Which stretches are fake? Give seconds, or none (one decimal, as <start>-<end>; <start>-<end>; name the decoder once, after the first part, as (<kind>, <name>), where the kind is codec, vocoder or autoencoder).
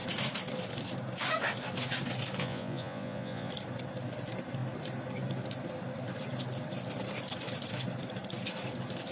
2.4-3.5 (vocoder, Vocos)